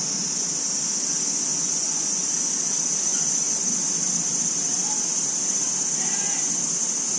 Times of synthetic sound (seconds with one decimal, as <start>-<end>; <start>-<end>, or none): 1.5-2.3; 3.1-3.7